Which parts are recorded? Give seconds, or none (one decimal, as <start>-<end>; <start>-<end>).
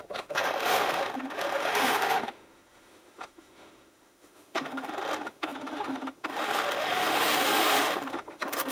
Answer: none